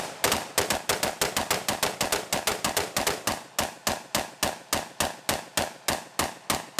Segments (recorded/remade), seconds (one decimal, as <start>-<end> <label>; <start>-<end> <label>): 0.0-6.8 recorded